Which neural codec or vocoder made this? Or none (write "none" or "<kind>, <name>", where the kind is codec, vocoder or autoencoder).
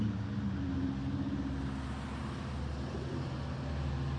none